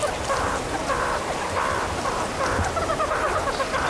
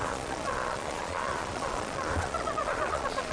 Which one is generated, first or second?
second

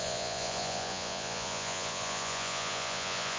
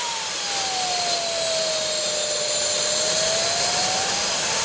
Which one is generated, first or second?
first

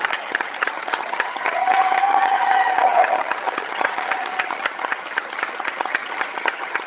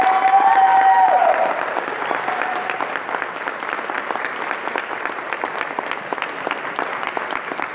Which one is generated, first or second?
first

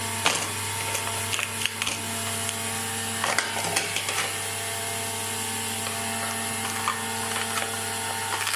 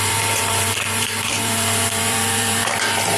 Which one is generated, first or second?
second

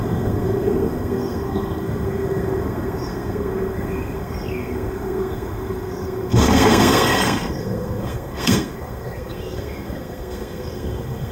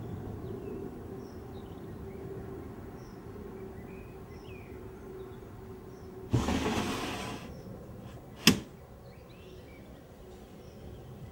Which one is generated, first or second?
first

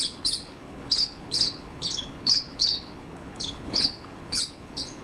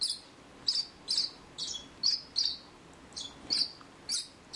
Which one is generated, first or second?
first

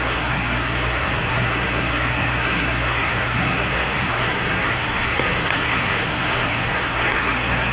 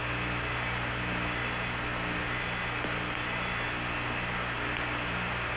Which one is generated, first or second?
first